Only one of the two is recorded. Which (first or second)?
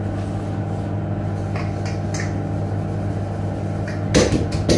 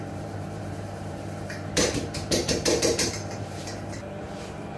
first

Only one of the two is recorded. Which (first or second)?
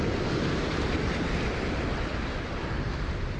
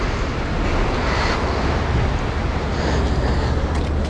second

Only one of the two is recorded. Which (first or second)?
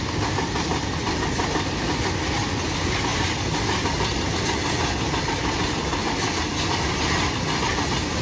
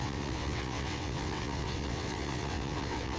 first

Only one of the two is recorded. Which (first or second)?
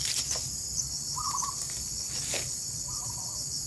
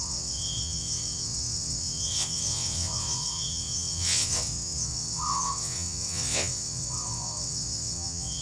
first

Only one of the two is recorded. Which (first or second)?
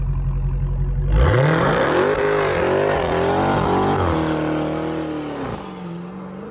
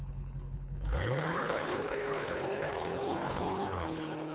first